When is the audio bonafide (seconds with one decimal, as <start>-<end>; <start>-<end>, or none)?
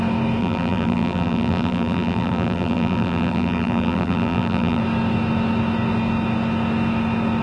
0.0-0.4; 4.8-7.4